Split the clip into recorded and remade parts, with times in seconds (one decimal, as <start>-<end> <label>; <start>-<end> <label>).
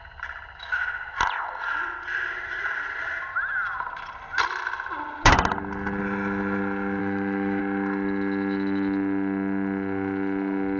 0.0-7.0 recorded; 7.0-7.6 remade; 7.6-10.8 recorded